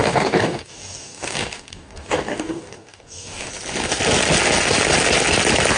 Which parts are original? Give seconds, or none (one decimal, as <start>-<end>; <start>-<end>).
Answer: 3.5-5.8